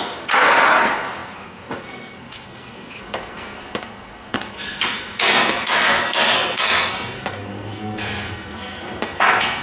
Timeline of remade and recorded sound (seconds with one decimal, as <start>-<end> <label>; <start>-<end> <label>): 0.0-9.6 remade

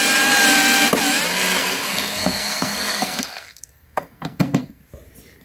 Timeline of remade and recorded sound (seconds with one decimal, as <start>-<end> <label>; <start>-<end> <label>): 0.0-1.6 recorded; 1.6-4.8 remade; 4.8-5.4 recorded

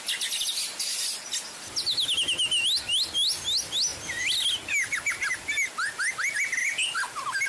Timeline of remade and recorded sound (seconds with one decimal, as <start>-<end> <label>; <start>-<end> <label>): 0.0-7.5 recorded